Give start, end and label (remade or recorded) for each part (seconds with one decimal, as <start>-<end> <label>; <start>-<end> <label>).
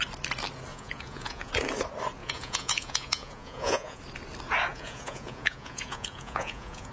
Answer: 0.0-0.7 recorded; 0.7-1.5 remade; 1.5-2.2 recorded; 2.2-4.0 remade; 4.0-4.7 recorded; 4.7-6.9 remade